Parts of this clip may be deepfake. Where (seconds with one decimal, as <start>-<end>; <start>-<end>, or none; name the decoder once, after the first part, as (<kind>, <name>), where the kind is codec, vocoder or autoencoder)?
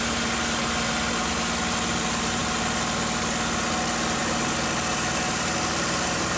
none